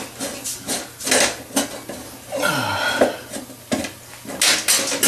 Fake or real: real